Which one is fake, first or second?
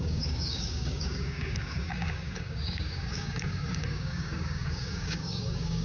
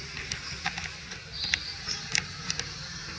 first